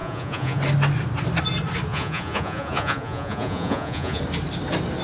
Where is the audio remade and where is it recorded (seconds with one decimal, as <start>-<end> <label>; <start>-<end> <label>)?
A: 0.0-0.6 remade; 0.6-1.9 recorded; 1.9-4.2 remade; 4.2-5.0 recorded

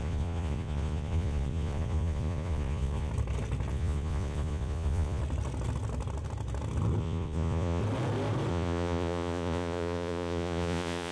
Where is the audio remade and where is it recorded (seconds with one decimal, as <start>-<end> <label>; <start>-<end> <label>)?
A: 0.0-3.1 remade; 3.1-3.7 recorded; 3.7-5.2 remade; 5.2-7.0 recorded; 7.0-7.8 remade; 7.8-8.5 recorded; 8.5-11.1 remade

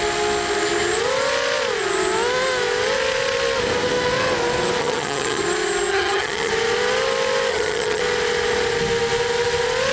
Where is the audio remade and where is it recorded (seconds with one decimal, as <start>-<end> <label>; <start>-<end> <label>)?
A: 0.0-4.8 recorded; 4.8-5.4 remade; 5.4-5.9 recorded; 5.9-6.5 remade; 6.5-7.5 recorded; 7.5-8.0 remade; 8.0-9.9 recorded

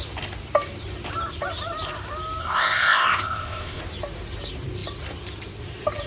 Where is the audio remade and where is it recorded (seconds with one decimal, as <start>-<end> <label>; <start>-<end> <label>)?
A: 0.0-2.4 recorded; 2.4-3.8 remade; 3.8-6.1 recorded

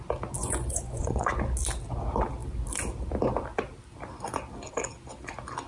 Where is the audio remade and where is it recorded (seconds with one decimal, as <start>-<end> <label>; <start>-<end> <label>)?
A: 0.0-0.4 recorded; 0.4-1.3 remade; 1.3-5.7 recorded

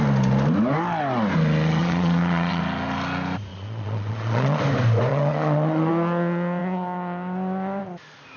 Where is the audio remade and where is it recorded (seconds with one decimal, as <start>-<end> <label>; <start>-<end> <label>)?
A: 0.0-1.8 recorded; 1.8-2.6 remade; 2.6-3.5 recorded; 3.5-4.6 remade; 4.6-5.1 recorded; 5.1-5.9 remade; 5.9-8.4 recorded